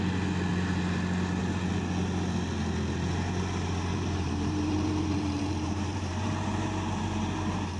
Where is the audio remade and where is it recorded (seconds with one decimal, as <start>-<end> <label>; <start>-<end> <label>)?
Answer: 0.0-3.9 recorded; 3.9-7.8 remade